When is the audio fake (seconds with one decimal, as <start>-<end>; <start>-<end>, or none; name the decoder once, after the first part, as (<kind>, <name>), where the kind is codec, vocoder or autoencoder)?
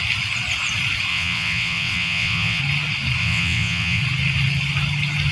1.1-2.6 (vocoder, WaveNeXt); 3.2-4.0